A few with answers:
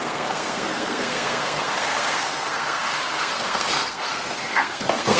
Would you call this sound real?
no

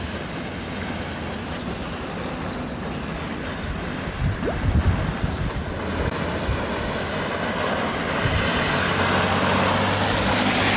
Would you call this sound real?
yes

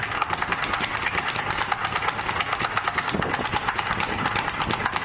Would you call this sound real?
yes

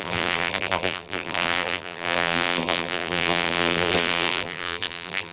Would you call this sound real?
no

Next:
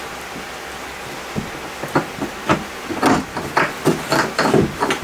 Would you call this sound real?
yes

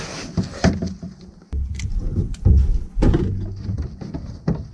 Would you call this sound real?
yes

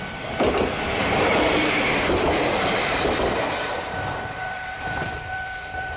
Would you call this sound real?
no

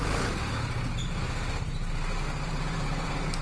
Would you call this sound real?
yes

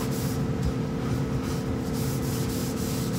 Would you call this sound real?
yes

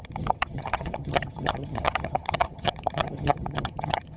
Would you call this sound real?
no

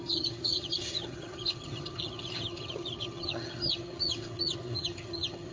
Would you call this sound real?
no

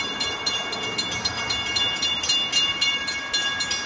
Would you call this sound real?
yes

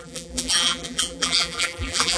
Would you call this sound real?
no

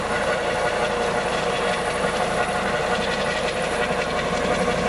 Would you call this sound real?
no